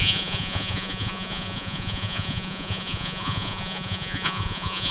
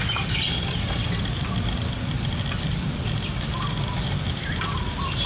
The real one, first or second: second